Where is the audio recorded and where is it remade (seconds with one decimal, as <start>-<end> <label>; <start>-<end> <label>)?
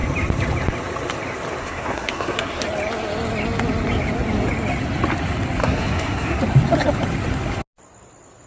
0.0-1.6 recorded; 1.6-2.6 remade; 2.6-5.6 recorded; 5.6-6.4 remade; 6.4-8.5 recorded